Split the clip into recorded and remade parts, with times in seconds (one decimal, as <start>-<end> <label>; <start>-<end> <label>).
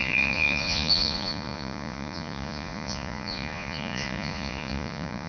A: 0.0-5.3 remade